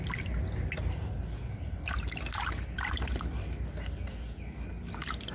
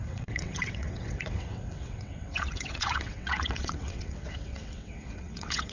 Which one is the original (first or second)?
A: first